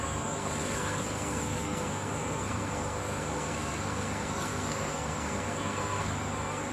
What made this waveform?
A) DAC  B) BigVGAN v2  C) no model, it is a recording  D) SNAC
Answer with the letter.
D